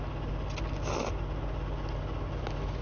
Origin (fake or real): real